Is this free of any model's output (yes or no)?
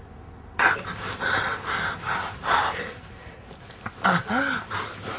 yes